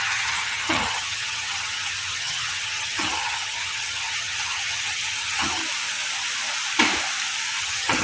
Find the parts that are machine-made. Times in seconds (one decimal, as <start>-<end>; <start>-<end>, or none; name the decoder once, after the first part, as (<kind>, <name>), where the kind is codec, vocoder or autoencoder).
0.0-5.6 (vocoder, HiFi-GAN); 7.6-8.0